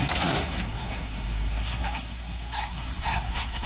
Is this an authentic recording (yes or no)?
no